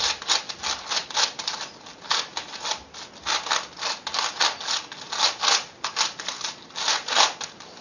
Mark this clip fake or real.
real